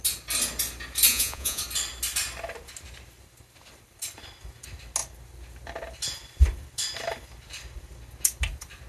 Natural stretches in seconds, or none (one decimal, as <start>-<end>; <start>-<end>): 0.0-1.1; 1.6-8.9